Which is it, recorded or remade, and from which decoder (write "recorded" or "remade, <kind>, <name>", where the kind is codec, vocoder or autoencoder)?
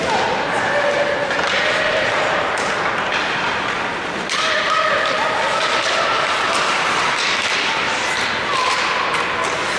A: recorded